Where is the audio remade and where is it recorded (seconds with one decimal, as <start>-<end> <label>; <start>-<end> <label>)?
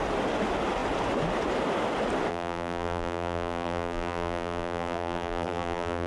0.0-2.3 recorded; 2.3-6.1 remade